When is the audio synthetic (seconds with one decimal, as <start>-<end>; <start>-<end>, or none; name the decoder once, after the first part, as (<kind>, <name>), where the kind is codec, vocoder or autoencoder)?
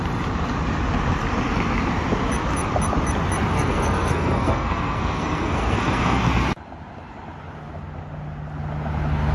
3.5-6.2 (codec, SNAC)